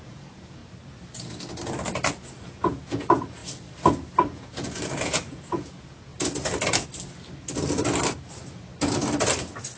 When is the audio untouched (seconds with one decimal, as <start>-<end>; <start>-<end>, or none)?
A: 0.6-2.2; 3.4-4.3; 6.1-9.8